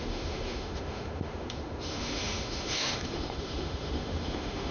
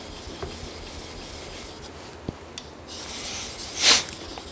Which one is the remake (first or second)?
first